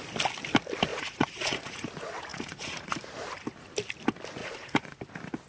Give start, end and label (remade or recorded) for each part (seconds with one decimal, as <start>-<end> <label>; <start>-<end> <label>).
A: 0.0-0.9 recorded; 0.9-1.9 remade; 1.9-2.3 recorded; 2.3-3.1 remade; 3.1-4.4 recorded; 4.4-5.0 remade; 5.0-5.5 recorded